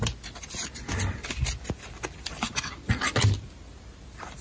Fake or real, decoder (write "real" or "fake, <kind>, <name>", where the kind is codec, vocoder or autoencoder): real